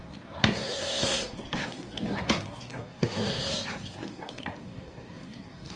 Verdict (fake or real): fake